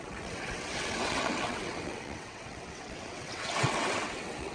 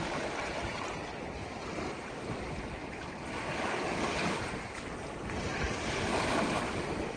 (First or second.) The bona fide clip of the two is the second